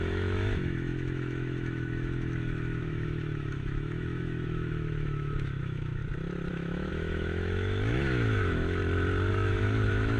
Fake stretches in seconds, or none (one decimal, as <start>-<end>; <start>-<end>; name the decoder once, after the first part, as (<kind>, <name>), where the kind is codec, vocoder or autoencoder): 0.0-6.0 (autoencoder, DAC-VAE); 6.5-8.8; 9.3-10.2